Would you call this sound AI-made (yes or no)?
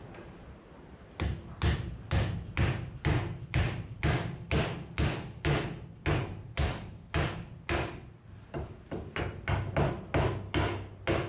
no